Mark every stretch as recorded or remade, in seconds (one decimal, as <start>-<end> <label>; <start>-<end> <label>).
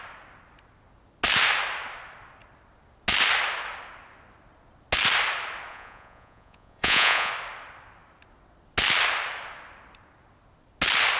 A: 0.0-5.7 recorded; 5.7-7.3 remade; 7.3-11.2 recorded